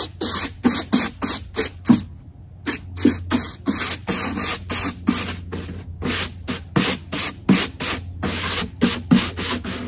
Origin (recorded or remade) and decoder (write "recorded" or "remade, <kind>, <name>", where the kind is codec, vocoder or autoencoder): recorded